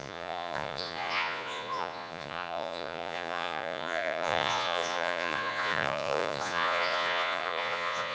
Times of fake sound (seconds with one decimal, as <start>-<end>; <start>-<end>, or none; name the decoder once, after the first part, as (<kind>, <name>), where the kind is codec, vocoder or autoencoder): 0.0-8.1 (vocoder, Vocos)